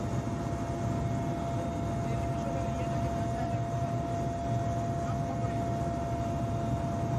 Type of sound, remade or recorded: recorded